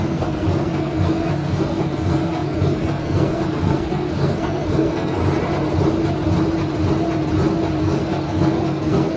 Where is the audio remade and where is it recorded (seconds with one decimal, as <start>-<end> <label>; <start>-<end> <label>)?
0.0-5.2 remade; 5.2-7.8 recorded; 7.8-9.2 remade